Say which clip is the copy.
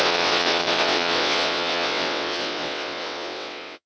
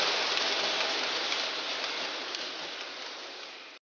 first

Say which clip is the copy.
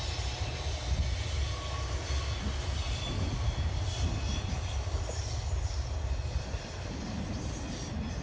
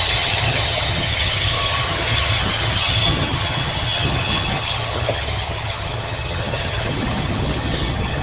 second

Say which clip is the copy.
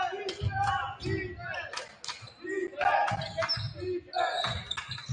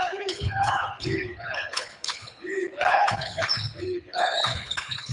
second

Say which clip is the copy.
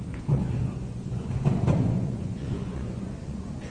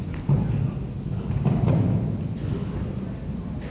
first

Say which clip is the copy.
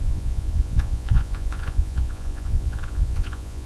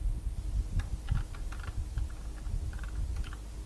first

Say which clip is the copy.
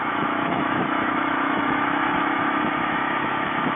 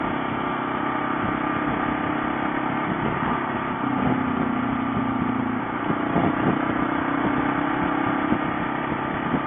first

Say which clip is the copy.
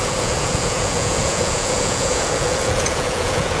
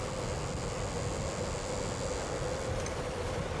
first